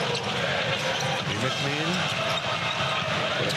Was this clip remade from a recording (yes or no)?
no